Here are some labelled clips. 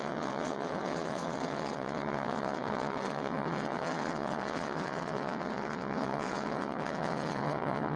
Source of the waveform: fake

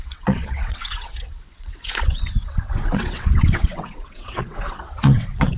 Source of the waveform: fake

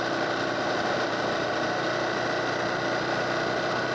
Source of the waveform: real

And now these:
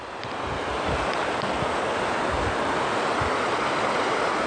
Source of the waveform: real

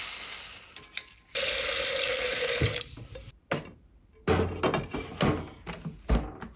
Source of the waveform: real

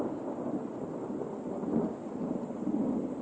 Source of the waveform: real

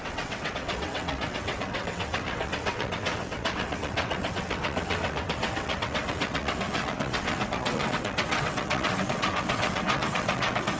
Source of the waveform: fake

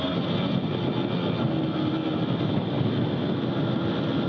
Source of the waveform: real